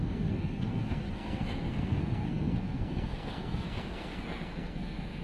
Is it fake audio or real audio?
fake